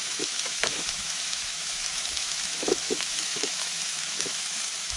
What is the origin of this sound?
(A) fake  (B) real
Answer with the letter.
A